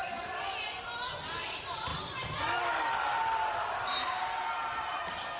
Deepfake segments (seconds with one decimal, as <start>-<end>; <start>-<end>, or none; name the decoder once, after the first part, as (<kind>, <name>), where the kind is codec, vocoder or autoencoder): none